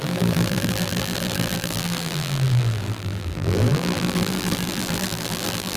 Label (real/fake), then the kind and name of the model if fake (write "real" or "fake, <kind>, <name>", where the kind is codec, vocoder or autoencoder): fake, vocoder, BigVGAN v2